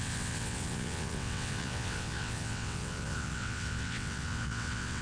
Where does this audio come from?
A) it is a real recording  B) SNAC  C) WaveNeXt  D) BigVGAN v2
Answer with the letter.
C